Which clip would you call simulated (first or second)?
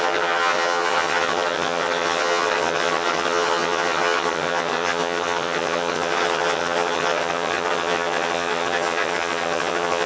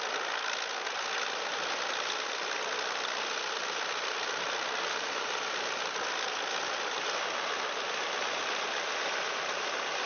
first